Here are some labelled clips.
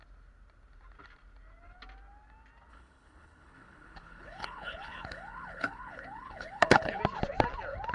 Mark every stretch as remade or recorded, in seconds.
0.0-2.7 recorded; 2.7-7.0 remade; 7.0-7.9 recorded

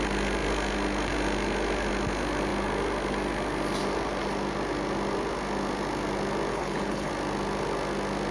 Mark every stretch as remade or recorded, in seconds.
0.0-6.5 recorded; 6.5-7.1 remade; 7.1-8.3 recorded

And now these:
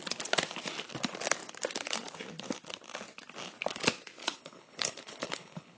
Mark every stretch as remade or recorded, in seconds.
0.0-4.2 recorded; 4.2-5.8 remade